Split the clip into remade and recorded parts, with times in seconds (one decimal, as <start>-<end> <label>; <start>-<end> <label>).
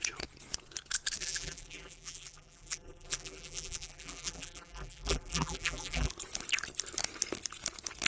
0.0-1.2 recorded; 1.2-6.1 remade; 6.1-8.1 recorded